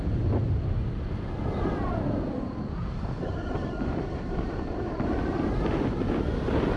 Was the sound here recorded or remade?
recorded